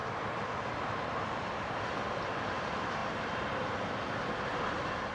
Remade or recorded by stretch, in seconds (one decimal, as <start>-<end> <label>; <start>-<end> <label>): 0.0-0.8 recorded; 0.8-5.1 remade